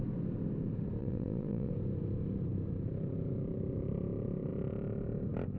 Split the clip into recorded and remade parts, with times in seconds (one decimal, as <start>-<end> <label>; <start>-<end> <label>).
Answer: 0.0-1.0 recorded; 1.0-1.7 remade; 1.7-5.6 recorded